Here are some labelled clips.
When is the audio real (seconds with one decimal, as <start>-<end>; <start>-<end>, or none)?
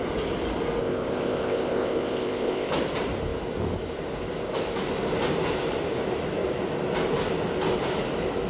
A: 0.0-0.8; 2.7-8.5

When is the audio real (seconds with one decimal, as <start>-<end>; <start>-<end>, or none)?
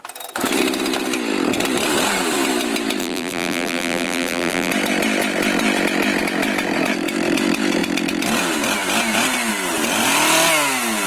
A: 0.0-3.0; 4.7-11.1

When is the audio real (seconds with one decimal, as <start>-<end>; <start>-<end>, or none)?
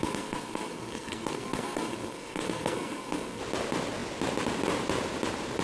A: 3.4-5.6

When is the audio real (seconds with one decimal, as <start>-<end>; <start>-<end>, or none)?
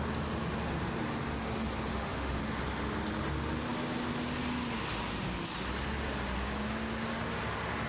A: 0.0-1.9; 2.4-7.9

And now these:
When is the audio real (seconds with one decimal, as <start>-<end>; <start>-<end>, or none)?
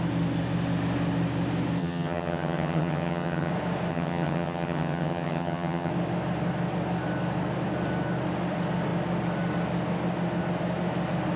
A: 0.0-1.8; 3.5-3.9; 5.9-11.4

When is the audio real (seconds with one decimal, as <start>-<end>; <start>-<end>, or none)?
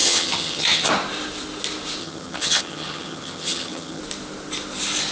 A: 0.9-2.0; 4.0-5.1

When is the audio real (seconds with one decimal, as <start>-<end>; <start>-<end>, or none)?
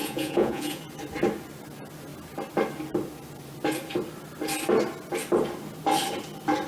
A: 0.8-6.7